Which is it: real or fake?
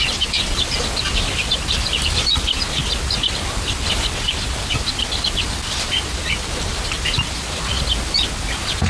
real